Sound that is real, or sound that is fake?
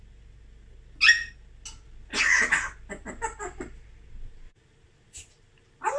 real